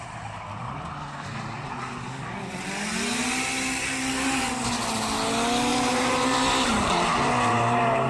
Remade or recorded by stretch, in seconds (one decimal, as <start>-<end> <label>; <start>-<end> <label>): 0.0-5.7 recorded; 5.7-7.1 remade; 7.1-8.1 recorded